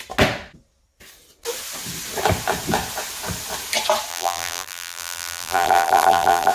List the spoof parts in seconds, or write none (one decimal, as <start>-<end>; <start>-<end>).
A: 4.1-6.5